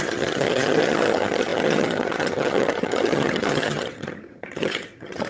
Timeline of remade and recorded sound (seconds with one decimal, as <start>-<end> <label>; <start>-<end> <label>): 0.0-5.3 remade